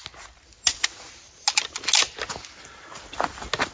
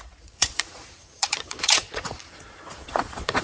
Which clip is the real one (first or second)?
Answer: first